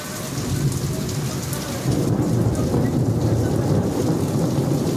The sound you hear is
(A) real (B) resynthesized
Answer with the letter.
A